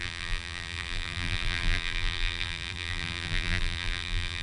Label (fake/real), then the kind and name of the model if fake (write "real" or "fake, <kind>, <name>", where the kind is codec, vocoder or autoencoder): fake, vocoder, BigVGAN v2